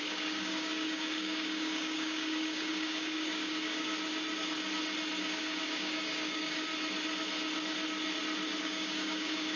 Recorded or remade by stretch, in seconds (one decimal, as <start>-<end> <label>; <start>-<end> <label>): 0.0-3.9 remade; 3.9-5.2 recorded; 5.2-6.7 remade; 6.7-8.6 recorded; 8.6-9.6 remade